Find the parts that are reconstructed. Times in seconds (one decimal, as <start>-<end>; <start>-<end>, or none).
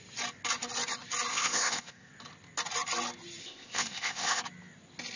1.3-2.1; 3.4-4.4